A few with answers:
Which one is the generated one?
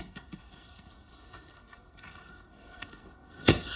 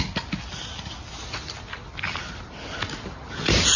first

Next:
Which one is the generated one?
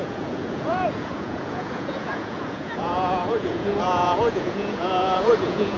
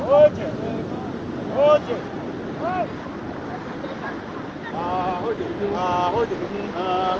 first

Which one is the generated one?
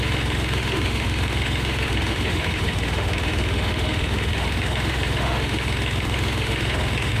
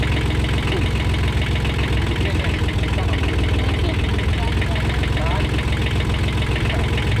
first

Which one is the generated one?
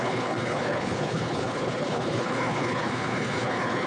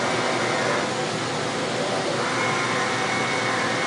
first